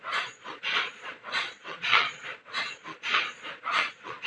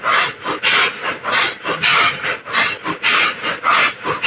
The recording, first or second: second